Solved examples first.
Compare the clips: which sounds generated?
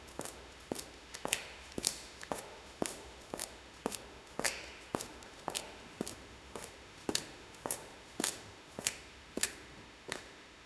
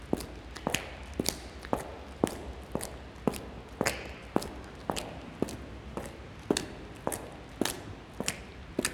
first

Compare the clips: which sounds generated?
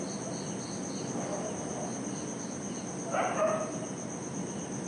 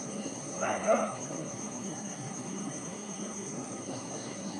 second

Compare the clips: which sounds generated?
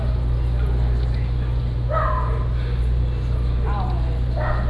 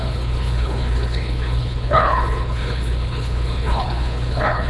second